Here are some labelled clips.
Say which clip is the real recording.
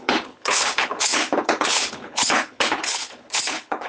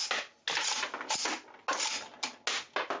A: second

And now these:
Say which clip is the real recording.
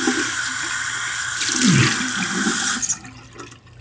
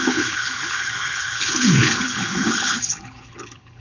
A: first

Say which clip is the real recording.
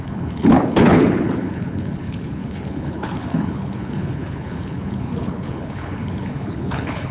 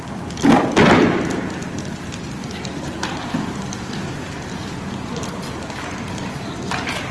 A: second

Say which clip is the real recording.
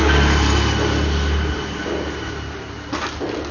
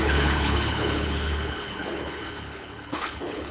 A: first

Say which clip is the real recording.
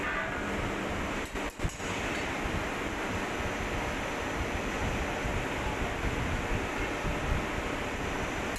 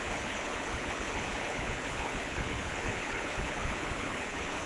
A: first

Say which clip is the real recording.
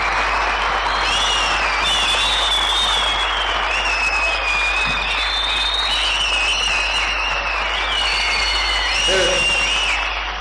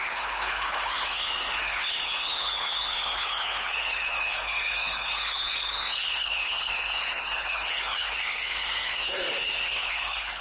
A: first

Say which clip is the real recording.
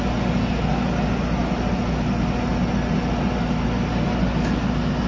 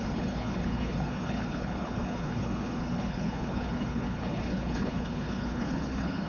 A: first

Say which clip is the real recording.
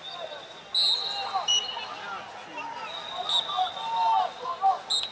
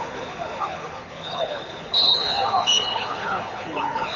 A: first